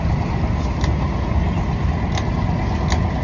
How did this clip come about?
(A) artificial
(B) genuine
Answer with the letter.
B